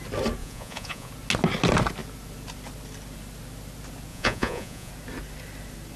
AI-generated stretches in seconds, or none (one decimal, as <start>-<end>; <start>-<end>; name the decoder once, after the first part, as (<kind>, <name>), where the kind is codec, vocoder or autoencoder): 0.4-1.1 (vocoder, Vocos); 4.1-4.9